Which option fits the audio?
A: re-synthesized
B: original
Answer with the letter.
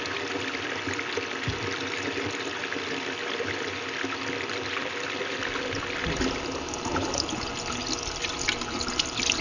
B